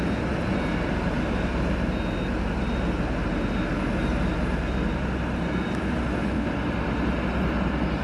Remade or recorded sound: recorded